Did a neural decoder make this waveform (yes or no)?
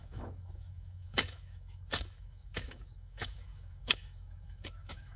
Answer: yes